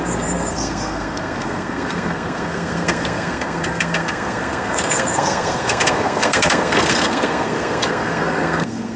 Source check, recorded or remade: remade